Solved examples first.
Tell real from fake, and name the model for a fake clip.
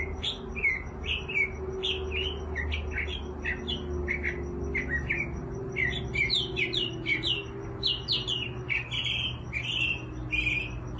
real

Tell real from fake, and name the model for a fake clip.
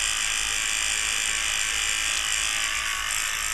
real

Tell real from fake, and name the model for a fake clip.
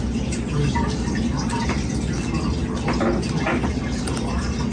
real